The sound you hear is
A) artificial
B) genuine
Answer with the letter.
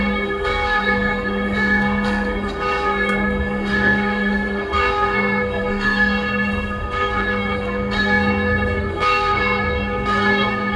A